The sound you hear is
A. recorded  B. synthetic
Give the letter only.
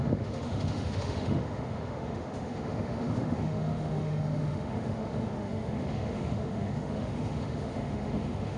B